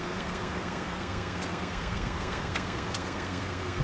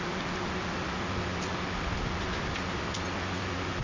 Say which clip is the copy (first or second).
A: first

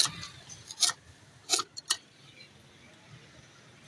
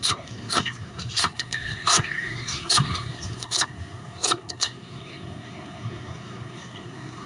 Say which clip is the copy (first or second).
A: second